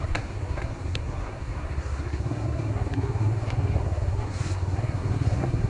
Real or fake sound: fake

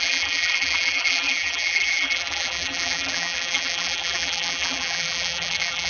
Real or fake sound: fake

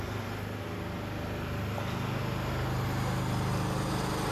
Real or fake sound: real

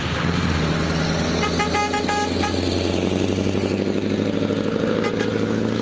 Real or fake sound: real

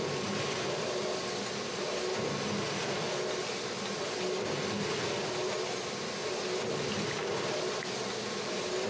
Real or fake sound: real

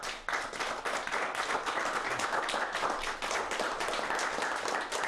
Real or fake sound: real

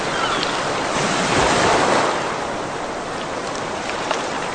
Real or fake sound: real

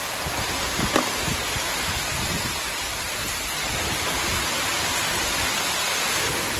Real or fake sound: real